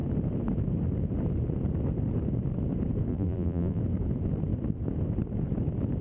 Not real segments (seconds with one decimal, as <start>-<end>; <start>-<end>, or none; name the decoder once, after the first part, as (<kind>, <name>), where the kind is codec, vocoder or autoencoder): 3.1-3.8 (vocoder, BigVGAN v2)